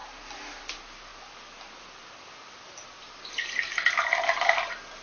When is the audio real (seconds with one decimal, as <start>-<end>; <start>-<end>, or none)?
0.0-5.0